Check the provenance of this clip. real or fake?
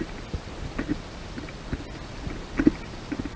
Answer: real